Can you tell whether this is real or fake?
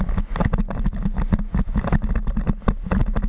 real